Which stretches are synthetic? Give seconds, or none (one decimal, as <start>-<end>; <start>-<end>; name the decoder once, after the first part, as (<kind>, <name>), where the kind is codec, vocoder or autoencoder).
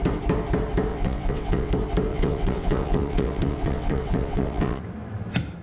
0.9-1.7 (vocoder, WaveNeXt); 2.1-4.8